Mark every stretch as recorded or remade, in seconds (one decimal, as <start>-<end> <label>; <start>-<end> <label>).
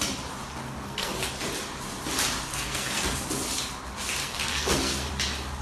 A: 0.0-0.6 recorded; 0.6-1.3 remade; 1.3-2.5 recorded; 2.5-3.3 remade; 3.3-4.2 recorded; 4.2-5.1 remade; 5.1-5.6 recorded